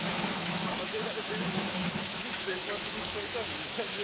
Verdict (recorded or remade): remade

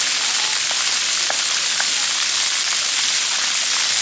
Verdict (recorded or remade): recorded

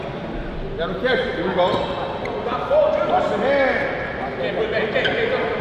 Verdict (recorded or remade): recorded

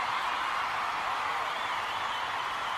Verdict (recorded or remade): recorded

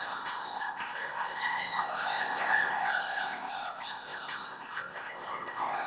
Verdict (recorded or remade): remade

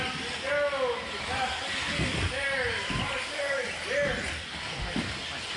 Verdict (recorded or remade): recorded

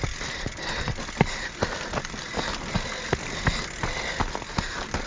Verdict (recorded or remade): recorded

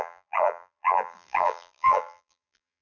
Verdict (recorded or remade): remade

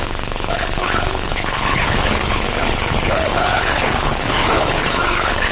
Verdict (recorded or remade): remade